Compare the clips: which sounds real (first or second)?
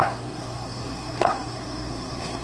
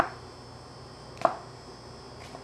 second